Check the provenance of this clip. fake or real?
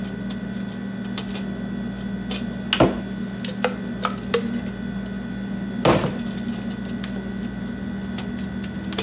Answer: real